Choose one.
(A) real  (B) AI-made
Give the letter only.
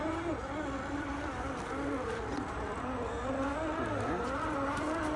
A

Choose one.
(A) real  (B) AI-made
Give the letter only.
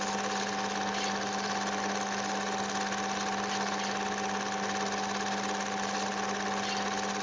A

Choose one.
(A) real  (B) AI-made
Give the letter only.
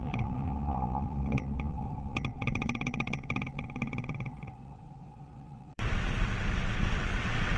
B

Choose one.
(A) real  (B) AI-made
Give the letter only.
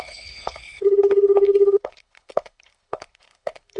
B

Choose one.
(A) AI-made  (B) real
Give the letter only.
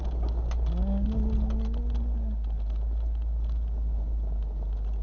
B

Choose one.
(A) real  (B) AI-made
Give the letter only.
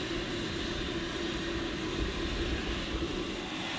A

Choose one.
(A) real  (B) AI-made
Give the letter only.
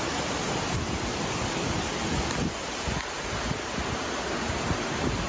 A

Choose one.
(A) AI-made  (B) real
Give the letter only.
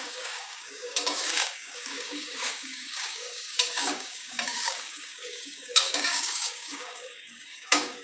A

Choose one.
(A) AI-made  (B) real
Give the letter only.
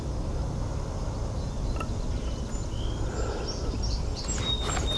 B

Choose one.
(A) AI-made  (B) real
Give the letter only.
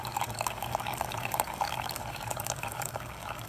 A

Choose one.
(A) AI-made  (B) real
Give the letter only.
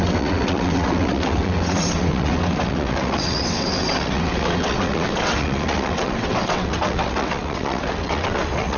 A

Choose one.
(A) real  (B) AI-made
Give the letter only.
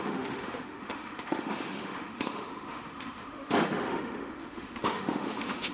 B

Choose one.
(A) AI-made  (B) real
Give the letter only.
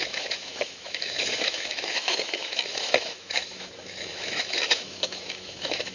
A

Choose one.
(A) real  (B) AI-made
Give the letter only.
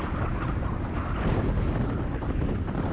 A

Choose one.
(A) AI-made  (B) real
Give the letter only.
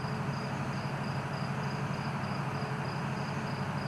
B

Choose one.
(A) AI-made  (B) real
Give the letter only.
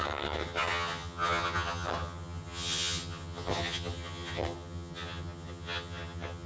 A